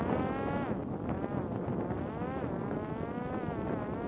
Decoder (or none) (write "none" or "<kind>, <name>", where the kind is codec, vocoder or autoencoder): none